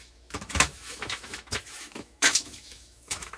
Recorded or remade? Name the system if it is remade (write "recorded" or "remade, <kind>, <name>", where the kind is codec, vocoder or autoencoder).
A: remade, autoencoder, DAC-VAE